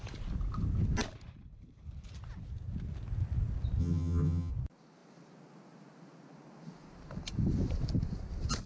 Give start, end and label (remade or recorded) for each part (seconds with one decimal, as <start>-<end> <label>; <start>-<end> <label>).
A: 0.0-3.8 recorded; 3.8-4.5 remade; 4.5-8.7 recorded